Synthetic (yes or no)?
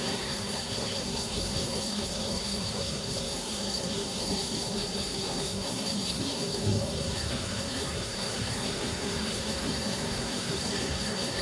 yes